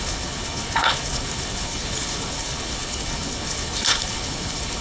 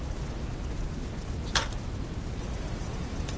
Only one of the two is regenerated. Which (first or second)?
first